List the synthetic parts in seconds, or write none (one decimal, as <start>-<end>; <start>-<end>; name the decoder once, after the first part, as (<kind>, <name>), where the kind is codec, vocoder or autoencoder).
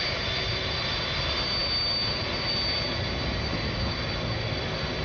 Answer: none